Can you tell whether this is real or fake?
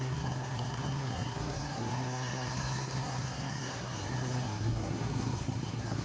fake